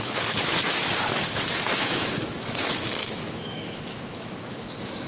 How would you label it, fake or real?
fake